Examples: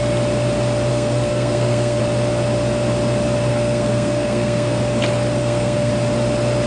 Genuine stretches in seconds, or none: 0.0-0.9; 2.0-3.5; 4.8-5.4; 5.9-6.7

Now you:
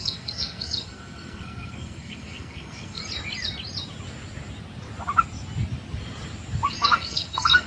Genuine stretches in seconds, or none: 3.0-6.7

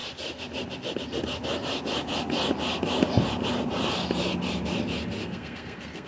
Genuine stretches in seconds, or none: 0.0-5.2

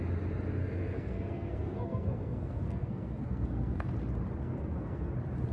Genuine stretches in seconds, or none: 0.0-0.6; 3.9-4.4; 5.1-5.5